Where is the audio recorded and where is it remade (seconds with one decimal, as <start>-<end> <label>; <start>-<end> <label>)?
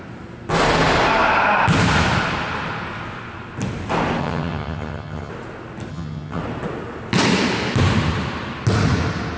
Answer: 0.0-4.2 recorded; 4.2-5.3 remade; 5.3-5.9 recorded; 5.9-6.4 remade; 6.4-9.4 recorded